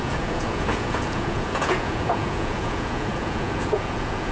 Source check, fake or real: fake